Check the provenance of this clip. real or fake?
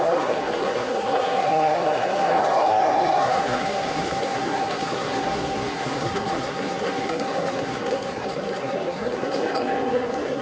fake